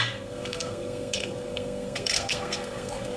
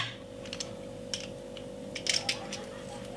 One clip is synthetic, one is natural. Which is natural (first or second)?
second